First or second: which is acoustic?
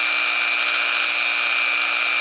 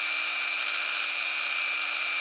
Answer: first